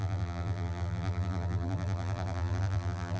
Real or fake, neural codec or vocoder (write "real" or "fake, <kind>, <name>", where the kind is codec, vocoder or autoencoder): fake, vocoder, BigVGAN v2